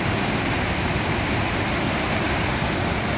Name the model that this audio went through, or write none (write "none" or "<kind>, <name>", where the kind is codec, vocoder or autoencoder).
vocoder, BigVGAN v2